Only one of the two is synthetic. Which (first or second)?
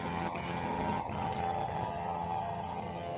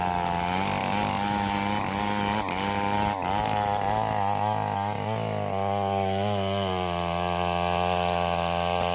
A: first